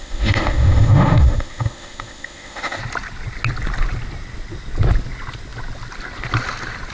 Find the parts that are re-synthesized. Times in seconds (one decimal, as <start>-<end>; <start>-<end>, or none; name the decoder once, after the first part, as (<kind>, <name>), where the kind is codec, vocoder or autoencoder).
0.0-2.8 (autoencoder, DAC-VAE)

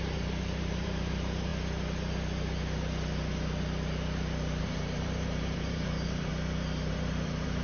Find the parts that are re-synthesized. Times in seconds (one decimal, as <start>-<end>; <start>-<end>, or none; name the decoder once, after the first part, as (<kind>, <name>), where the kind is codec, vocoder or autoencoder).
0.0-1.5 (vocoder, BigVGAN v2); 4.6-6.3; 6.9-7.6

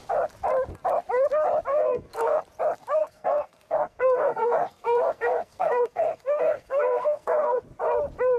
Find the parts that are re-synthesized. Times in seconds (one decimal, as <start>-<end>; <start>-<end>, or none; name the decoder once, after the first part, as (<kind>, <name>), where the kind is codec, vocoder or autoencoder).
1.7-2.4 (codec, SNAC); 3.0-7.6

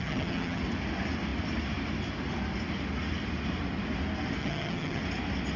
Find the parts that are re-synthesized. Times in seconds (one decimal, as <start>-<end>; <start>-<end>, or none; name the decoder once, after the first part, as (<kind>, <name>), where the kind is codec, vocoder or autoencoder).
0.0-0.6 (vocoder, HiFi-GAN); 4.4-5.0

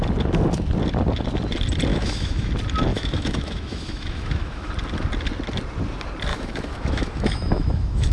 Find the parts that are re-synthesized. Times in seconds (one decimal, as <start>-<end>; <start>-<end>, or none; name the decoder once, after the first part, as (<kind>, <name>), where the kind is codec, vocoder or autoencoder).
1.9-2.5 (autoencoder, DAC-VAE); 2.9-4.7; 6.3-8.1

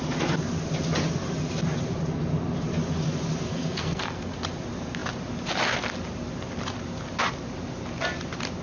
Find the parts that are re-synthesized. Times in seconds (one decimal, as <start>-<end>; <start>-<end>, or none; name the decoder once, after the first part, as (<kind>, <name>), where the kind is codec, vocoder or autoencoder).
3.5-4.3 (codec, SNAC)